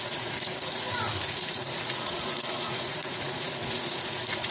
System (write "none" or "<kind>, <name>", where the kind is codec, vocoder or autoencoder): vocoder, Vocos